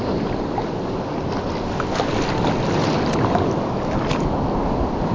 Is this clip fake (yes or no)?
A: no